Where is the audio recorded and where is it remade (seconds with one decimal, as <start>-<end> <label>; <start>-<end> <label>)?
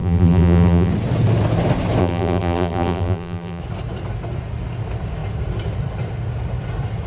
0.0-0.9 remade; 0.9-2.0 recorded; 2.0-3.6 remade; 3.6-7.1 recorded